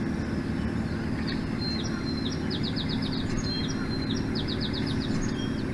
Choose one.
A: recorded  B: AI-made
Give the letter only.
A